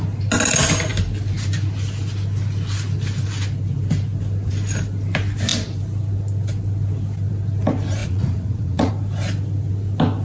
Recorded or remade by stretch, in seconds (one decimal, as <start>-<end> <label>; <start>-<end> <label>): 0.0-8.0 recorded; 8.0-8.9 remade; 8.9-10.2 recorded